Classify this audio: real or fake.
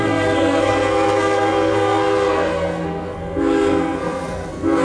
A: fake